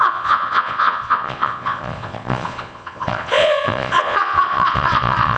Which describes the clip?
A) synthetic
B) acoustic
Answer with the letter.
A